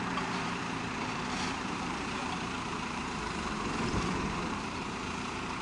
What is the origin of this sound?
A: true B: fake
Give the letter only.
B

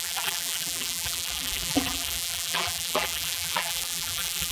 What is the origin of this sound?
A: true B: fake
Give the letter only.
B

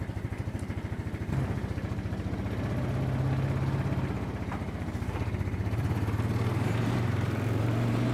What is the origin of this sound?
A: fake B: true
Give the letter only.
A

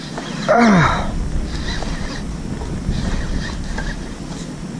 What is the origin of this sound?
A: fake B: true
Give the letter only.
B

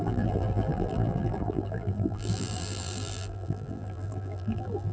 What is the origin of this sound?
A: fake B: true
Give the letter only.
A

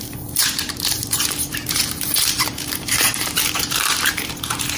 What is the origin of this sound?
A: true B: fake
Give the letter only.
B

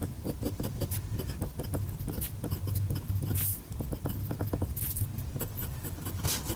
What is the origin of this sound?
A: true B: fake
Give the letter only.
A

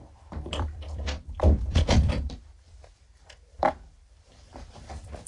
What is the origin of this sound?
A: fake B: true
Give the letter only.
A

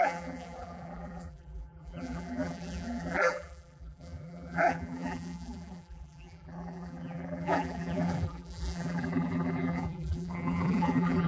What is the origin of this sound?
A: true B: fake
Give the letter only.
B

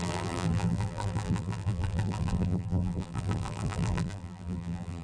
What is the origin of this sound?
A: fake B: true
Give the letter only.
A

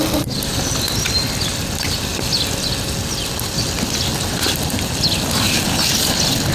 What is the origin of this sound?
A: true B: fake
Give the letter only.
A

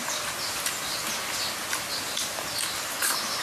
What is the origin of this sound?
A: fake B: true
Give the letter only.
B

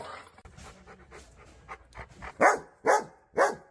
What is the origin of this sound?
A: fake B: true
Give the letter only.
B